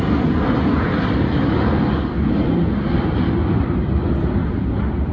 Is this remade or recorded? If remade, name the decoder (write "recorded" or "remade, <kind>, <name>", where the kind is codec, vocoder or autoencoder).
recorded